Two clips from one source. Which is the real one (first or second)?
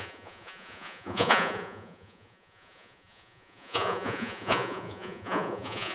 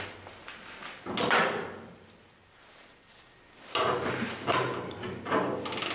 second